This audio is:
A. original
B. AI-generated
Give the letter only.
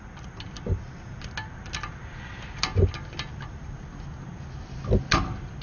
A